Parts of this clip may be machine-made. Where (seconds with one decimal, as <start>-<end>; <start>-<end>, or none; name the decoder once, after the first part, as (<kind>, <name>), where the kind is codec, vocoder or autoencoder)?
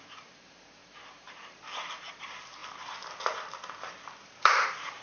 0.0-2.6 (vocoder, BigVGAN v2); 4.2-5.0